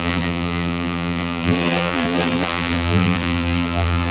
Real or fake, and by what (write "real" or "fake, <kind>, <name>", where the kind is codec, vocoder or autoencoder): fake, vocoder, BigVGAN v2